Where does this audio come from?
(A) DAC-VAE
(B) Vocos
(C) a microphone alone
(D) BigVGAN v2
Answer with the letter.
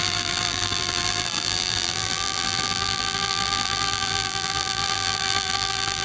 D